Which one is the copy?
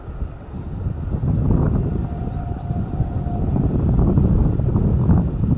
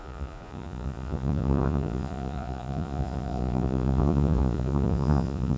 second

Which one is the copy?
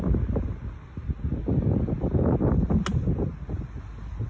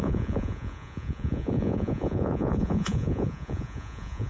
second